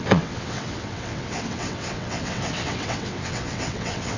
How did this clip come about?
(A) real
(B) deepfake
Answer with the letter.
B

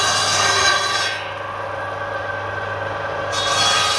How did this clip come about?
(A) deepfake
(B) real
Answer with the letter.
B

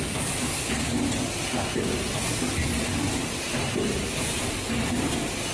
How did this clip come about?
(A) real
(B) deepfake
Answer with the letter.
A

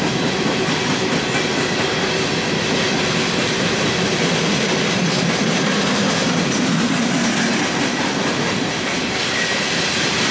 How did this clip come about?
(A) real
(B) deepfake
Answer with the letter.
A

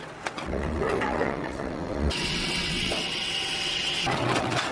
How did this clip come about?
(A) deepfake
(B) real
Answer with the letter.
A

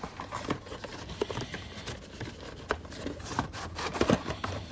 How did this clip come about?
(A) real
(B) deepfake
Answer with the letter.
A